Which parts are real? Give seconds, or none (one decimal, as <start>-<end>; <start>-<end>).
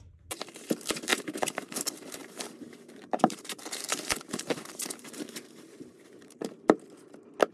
0.0-1.1; 1.8-2.2; 6.6-7.5